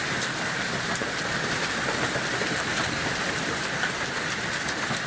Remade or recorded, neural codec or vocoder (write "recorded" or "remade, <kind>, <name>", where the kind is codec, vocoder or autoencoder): recorded